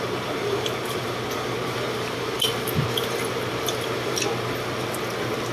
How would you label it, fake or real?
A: real